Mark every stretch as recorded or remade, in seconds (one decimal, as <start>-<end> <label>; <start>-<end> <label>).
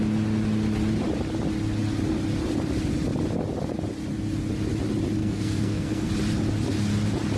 0.0-5.2 recorded; 5.2-6.1 remade; 6.1-7.4 recorded